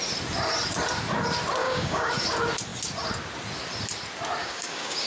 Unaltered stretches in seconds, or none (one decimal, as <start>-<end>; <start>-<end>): 0.0-1.6; 2.1-4.4

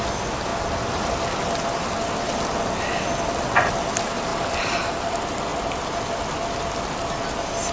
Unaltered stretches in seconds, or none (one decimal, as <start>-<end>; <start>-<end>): 0.0-7.7

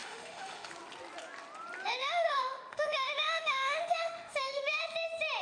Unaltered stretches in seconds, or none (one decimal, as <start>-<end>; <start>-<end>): 0.7-2.0; 4.8-5.4

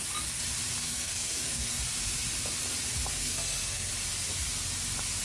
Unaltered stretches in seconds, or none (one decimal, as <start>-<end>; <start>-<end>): 0.0-0.8; 1.8-3.1; 3.9-5.2

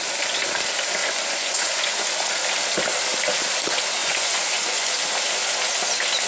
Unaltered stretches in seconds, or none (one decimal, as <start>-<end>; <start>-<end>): 0.0-1.0; 2.0-4.0; 4.9-6.3

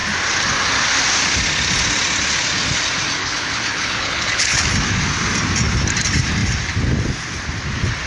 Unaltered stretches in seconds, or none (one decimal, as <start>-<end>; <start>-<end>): 0.0-3.2; 4.7-8.1

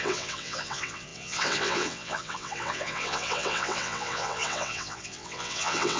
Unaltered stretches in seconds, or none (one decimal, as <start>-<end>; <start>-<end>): none